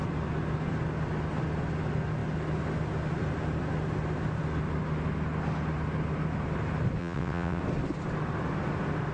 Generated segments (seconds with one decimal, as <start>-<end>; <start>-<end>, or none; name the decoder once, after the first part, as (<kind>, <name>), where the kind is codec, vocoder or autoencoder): 7.0-7.6 (vocoder, WaveNeXt)